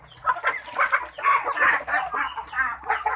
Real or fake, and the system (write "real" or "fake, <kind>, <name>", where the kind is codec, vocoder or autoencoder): real